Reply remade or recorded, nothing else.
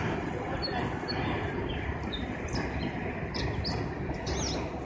recorded